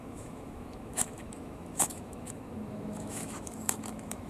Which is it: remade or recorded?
remade